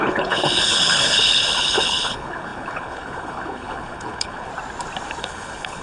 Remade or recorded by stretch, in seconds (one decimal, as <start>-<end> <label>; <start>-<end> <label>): 0.0-4.5 remade; 4.5-5.2 recorded; 5.2-5.8 remade